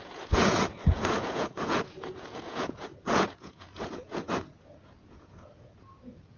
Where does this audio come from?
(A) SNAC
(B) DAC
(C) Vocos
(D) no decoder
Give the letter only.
C